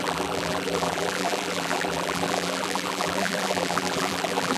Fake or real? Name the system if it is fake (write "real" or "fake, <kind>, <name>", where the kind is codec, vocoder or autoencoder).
fake, vocoder, BigVGAN v2